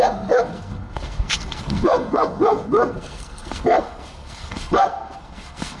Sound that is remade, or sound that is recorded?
remade